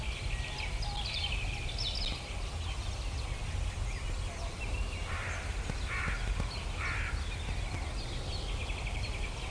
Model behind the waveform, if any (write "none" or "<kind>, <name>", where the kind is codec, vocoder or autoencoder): none